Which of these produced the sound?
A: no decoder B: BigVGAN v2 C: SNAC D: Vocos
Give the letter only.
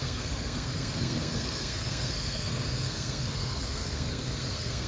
C